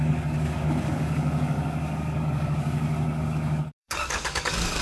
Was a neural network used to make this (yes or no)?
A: yes